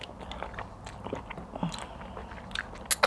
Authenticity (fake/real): real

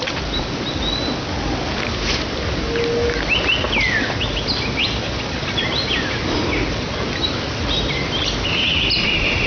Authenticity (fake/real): real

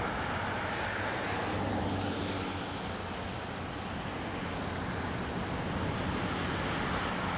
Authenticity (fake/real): real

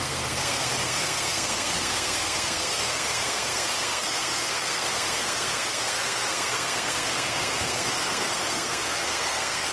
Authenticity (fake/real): fake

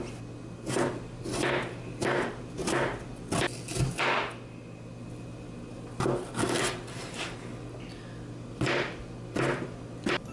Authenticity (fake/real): real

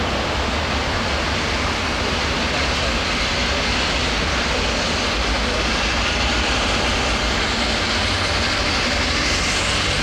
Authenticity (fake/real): real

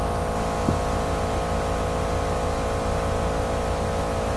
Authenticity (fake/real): real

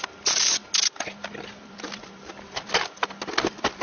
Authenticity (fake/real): real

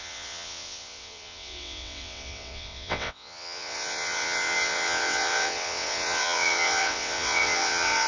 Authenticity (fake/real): fake